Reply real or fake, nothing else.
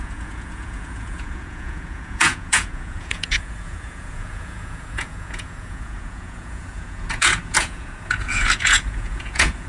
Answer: fake